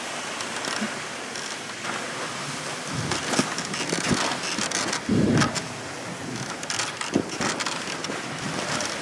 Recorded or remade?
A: recorded